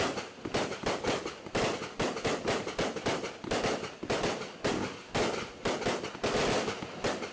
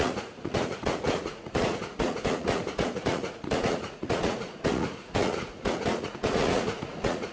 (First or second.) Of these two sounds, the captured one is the first